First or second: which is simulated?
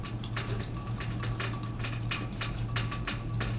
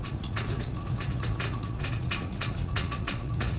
second